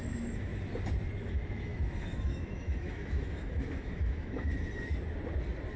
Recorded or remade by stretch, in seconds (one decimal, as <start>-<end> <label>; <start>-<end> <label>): 0.0-0.5 remade; 0.5-1.1 recorded; 1.1-4.5 remade; 4.5-5.8 recorded